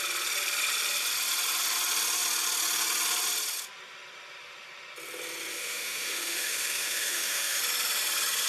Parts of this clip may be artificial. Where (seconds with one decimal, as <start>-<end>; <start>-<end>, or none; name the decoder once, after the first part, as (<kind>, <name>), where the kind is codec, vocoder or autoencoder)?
5.5-7.6 (autoencoder, DAC-VAE)